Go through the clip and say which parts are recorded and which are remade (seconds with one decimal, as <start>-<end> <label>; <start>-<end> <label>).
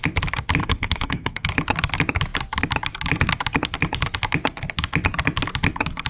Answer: 0.0-0.6 recorded; 0.6-1.5 remade; 1.5-6.1 recorded